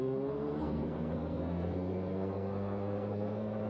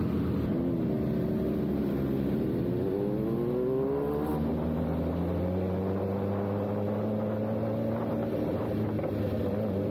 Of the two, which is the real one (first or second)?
second